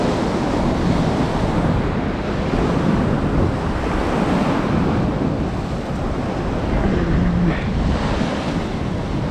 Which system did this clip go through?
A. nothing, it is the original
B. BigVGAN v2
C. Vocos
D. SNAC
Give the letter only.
A